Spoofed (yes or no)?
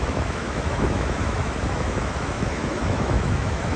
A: yes